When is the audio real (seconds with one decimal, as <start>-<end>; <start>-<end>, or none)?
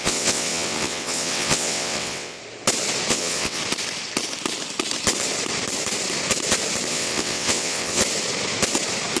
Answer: 2.4-3.1; 3.6-6.9; 8.0-9.2